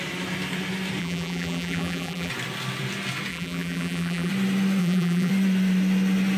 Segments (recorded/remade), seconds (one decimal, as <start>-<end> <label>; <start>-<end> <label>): 0.0-1.0 recorded; 1.0-2.3 remade; 2.3-3.3 recorded; 3.3-4.3 remade; 4.3-4.8 recorded; 4.8-5.3 remade; 5.3-6.4 recorded